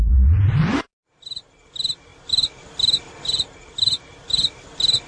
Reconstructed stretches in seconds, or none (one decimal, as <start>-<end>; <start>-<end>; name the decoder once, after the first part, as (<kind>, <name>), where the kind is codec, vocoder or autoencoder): none